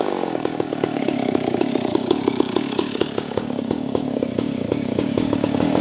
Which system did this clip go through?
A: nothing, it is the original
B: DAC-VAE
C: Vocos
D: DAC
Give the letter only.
D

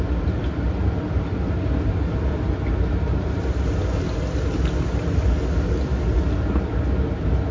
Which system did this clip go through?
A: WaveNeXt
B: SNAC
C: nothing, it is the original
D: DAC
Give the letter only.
C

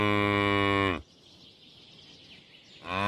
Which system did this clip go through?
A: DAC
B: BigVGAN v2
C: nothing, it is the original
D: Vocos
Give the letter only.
C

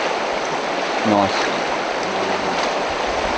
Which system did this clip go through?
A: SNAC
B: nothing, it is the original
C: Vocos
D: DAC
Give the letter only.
B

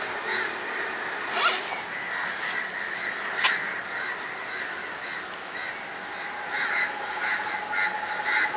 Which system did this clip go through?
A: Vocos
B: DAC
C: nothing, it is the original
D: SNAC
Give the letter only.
C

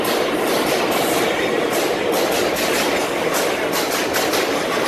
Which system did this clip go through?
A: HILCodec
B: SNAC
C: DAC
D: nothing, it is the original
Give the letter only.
D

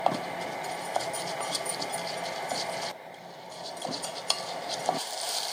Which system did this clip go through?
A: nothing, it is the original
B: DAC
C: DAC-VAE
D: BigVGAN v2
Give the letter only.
A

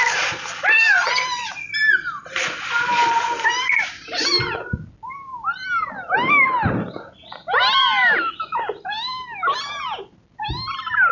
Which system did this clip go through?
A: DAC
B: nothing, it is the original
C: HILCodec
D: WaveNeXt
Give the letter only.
B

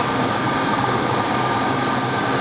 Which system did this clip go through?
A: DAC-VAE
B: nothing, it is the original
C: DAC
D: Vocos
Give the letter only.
C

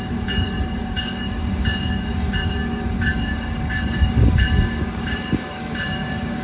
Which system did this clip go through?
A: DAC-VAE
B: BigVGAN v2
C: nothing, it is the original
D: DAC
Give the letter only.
D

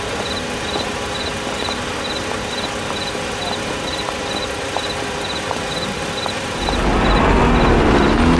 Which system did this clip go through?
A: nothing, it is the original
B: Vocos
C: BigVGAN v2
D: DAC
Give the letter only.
A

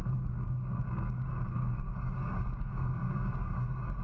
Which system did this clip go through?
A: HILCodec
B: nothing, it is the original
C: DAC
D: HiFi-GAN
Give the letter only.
C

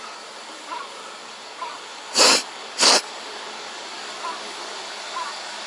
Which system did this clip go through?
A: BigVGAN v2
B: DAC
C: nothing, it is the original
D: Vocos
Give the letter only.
B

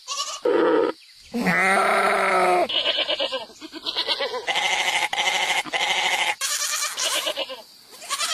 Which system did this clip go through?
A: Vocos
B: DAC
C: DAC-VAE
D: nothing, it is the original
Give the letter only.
D